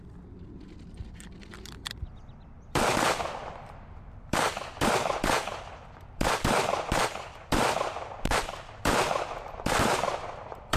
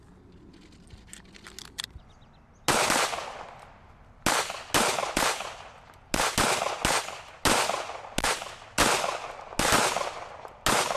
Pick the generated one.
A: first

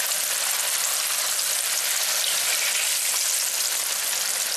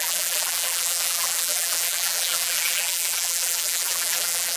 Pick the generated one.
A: second